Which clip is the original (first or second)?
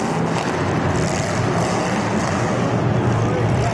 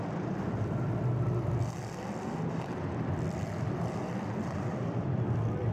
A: first